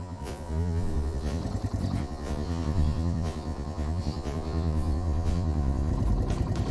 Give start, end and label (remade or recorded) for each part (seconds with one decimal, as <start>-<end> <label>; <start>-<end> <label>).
0.0-1.4 remade; 1.4-2.0 recorded; 2.0-5.9 remade; 5.9-6.7 recorded